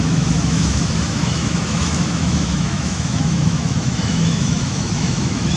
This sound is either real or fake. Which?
fake